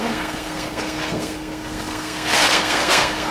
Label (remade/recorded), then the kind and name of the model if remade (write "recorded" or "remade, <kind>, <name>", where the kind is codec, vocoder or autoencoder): remade, codec, SNAC